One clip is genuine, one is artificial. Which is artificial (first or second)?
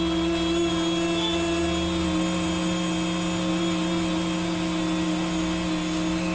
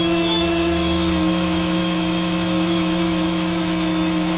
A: second